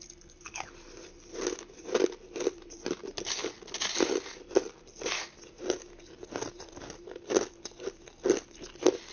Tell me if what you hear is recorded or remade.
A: recorded